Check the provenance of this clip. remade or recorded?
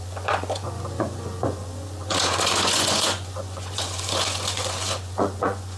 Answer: remade